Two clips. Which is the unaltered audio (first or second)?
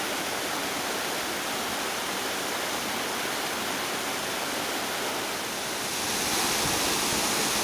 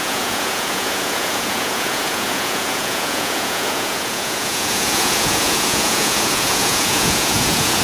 first